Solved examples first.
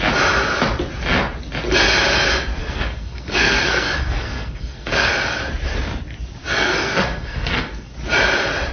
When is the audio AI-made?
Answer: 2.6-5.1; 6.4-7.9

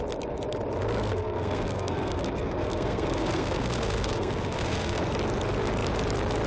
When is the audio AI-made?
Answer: 1.1-5.0

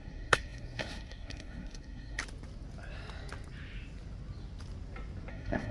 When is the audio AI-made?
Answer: 0.0-2.2; 5.3-5.7

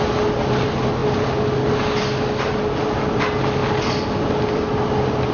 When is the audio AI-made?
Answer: none